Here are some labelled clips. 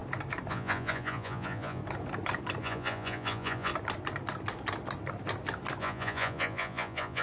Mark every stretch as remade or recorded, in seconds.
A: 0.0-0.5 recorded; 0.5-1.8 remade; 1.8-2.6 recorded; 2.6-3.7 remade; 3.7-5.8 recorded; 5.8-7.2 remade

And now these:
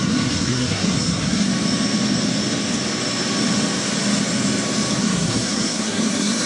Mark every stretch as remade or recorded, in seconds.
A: 0.0-1.5 remade; 1.5-5.0 recorded; 5.0-6.5 remade

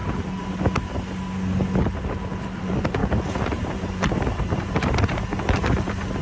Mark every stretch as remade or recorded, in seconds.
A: 0.0-2.4 recorded; 2.4-6.2 remade

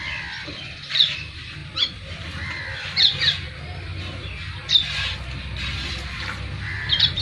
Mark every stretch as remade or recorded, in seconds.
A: 0.0-1.6 remade; 1.6-5.9 recorded; 5.9-7.2 remade

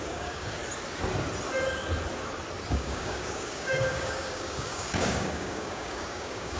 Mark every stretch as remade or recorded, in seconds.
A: 0.0-0.6 remade; 0.6-2.7 recorded; 2.7-6.6 remade

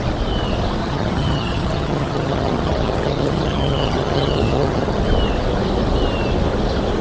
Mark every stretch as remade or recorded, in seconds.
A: 0.0-0.8 recorded; 0.8-5.0 remade; 5.0-7.0 recorded